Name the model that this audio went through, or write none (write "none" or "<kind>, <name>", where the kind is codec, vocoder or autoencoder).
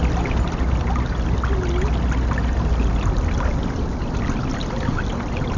none